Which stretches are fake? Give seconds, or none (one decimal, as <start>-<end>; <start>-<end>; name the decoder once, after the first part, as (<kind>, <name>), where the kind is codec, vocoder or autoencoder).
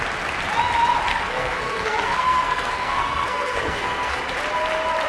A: 1.1-4.2 (codec, SNAC)